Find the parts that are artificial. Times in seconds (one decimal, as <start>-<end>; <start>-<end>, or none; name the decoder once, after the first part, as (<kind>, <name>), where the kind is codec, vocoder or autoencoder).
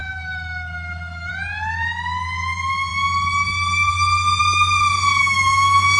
0.0-1.3 (autoencoder, DAC-VAE); 5.2-6.0